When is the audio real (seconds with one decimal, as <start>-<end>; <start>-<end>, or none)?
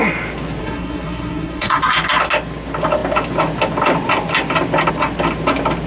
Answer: 0.0-0.6; 1.8-5.9